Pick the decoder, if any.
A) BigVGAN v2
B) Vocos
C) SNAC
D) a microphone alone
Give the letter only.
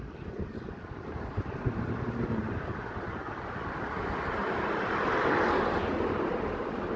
D